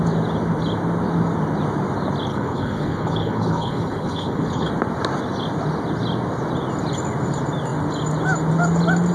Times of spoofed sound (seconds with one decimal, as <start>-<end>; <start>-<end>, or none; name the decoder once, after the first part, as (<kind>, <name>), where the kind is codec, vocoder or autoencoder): 2.3-4.7 (codec, HILCodec)